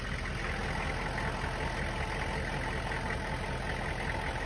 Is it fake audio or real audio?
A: real